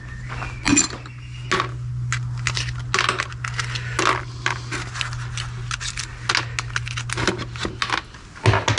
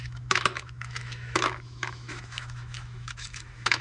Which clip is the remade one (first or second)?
second